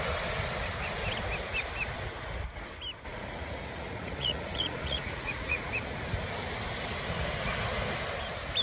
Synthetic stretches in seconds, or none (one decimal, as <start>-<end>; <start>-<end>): 3.1-5.7